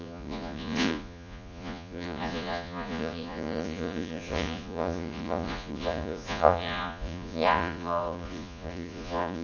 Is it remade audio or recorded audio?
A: remade